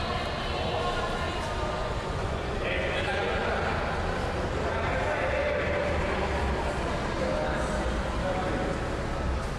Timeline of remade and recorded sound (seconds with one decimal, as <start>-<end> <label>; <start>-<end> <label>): 0.0-1.8 recorded; 1.8-3.5 remade; 3.5-9.6 recorded